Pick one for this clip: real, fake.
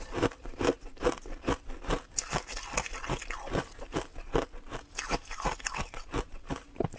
real